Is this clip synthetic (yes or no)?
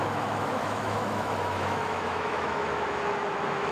yes